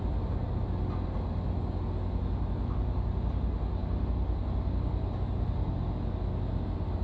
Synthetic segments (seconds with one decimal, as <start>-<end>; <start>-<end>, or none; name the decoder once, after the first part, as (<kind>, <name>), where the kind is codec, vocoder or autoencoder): none